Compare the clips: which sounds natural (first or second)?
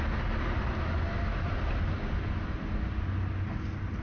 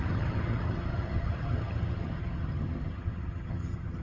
first